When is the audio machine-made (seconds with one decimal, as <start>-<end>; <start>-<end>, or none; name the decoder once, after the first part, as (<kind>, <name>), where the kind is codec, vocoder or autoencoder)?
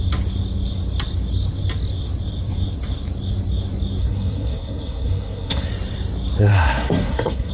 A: 4.0-5.7 (codec, SNAC); 6.5-7.5